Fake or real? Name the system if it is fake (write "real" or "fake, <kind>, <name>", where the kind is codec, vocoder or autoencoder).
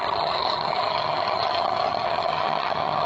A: fake, vocoder, HiFi-GAN